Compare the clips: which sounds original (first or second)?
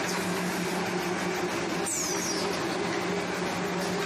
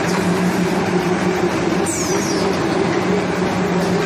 first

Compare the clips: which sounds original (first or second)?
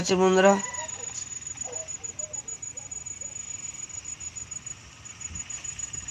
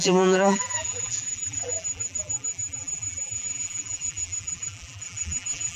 first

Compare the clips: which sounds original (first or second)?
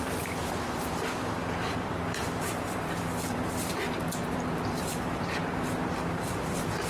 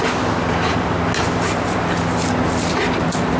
second